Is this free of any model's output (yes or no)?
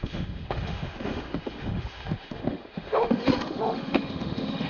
no